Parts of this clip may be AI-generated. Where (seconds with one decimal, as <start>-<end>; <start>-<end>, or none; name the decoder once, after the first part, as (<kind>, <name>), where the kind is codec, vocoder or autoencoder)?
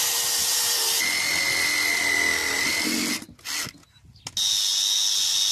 none